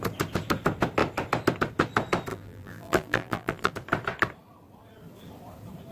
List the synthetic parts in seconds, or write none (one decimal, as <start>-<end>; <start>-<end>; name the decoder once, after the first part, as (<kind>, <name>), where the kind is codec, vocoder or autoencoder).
2.3-3.7 (vocoder, BigVGAN v2)